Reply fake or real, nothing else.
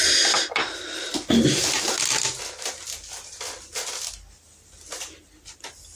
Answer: real